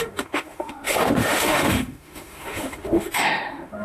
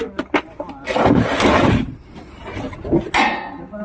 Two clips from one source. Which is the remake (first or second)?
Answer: first